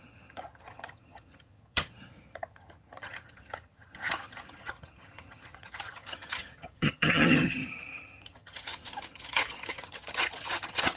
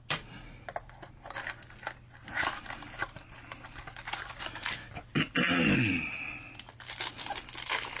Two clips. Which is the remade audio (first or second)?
first